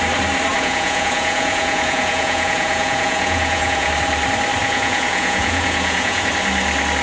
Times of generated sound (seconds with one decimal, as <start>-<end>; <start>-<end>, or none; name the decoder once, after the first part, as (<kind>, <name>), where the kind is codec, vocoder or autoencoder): 0.5-3.9 (vocoder, Vocos); 4.6-6.3